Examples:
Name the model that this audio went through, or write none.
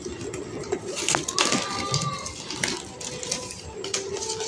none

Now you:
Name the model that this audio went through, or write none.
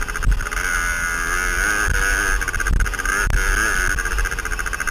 none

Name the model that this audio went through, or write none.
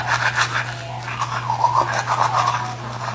none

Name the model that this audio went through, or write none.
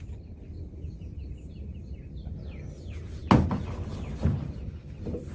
vocoder, BigVGAN v2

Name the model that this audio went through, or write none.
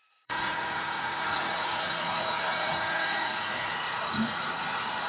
vocoder, Vocos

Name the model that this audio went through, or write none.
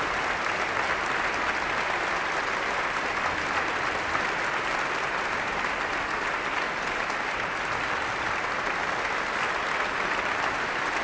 none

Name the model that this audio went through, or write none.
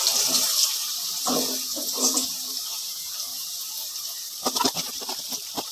vocoder, BigVGAN v2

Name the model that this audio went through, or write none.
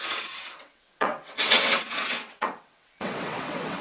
vocoder, WaveNeXt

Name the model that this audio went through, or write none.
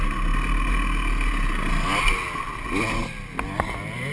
none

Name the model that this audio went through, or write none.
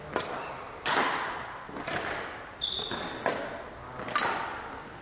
none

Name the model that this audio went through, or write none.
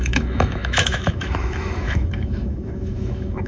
autoencoder, DAC-VAE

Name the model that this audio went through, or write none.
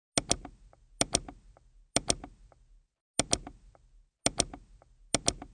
none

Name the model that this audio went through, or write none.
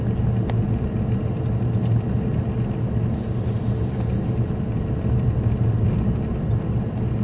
none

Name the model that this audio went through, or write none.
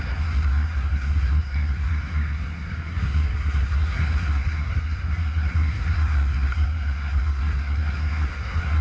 codec, SNAC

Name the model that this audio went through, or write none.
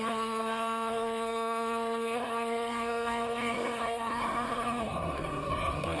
codec, SNAC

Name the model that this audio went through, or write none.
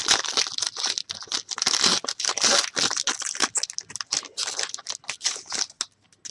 none